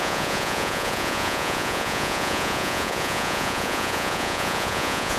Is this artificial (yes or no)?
yes